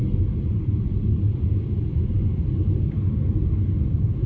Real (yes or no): yes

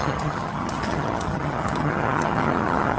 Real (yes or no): no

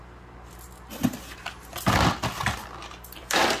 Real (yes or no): yes